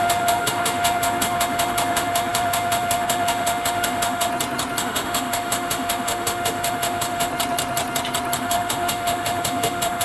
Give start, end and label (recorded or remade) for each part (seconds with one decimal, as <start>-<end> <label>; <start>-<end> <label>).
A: 0.0-4.3 remade; 4.3-4.8 recorded; 4.8-7.3 remade; 7.3-8.4 recorded; 8.4-10.0 remade